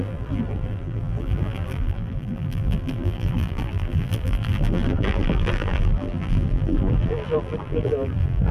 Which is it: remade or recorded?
remade